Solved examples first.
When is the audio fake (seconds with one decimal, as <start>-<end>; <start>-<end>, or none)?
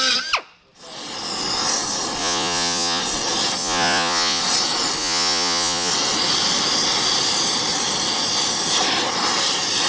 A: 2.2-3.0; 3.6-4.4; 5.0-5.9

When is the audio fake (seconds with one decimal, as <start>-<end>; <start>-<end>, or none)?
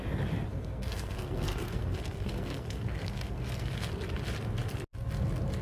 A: 0.5-3.9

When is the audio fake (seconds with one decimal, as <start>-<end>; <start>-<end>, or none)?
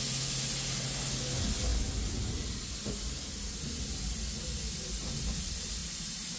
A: 5.8-6.4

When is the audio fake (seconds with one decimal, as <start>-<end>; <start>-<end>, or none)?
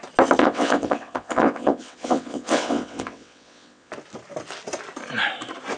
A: 0.4-3.9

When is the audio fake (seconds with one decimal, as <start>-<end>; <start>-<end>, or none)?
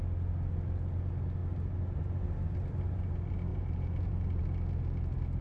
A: 3.5-4.4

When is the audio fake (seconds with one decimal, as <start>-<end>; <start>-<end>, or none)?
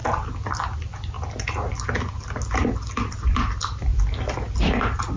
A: none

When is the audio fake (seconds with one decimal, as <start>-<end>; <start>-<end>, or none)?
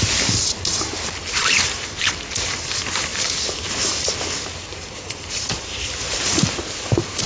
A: 4.7-7.3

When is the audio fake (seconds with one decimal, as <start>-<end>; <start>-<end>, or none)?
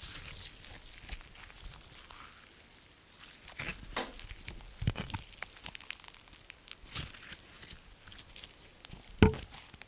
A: none